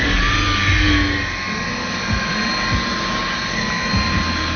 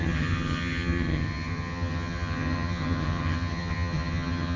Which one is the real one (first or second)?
first